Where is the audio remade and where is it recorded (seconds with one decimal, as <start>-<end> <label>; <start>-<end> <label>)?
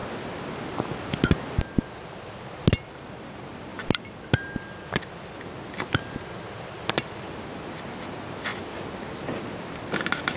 0.0-10.4 recorded